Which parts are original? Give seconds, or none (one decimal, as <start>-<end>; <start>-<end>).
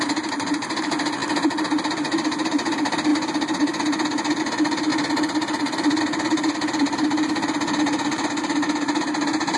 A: 3.1-4.4; 4.9-6.0